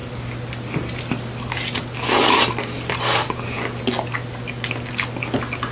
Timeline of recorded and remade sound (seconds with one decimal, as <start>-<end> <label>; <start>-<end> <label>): 0.0-5.7 recorded